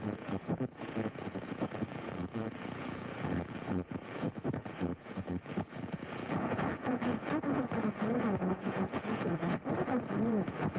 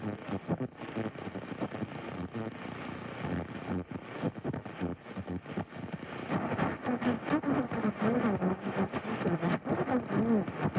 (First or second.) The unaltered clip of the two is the second